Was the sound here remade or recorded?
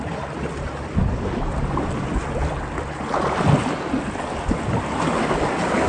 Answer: recorded